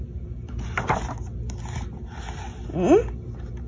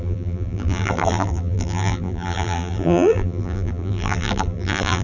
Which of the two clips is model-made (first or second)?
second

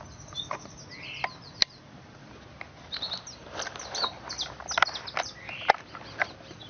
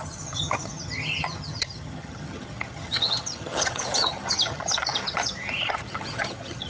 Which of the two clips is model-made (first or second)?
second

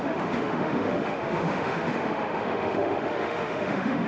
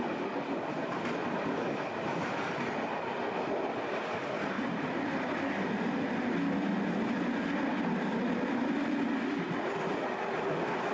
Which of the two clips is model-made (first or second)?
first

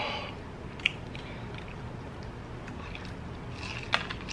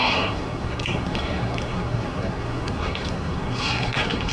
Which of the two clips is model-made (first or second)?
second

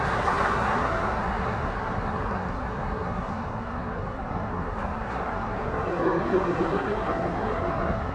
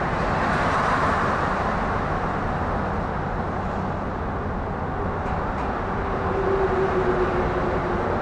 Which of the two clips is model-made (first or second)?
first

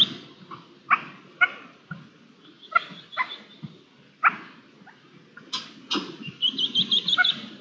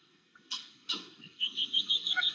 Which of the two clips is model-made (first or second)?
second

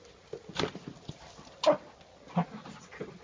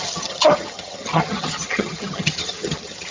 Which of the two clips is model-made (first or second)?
second